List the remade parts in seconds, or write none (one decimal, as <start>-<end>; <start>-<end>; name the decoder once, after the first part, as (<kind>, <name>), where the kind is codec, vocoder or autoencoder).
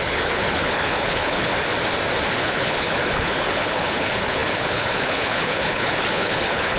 0.0-1.5 (codec, HILCodec); 2.3-6.8